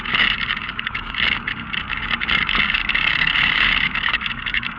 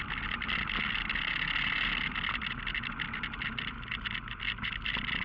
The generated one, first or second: first